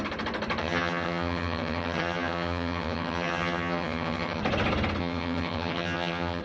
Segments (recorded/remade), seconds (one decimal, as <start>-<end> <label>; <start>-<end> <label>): 0.0-0.6 recorded; 0.6-4.4 remade; 4.4-5.0 recorded; 5.0-6.4 remade